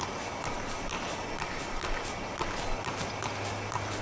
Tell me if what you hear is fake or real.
real